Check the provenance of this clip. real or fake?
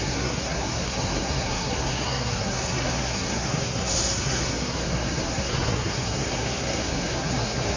fake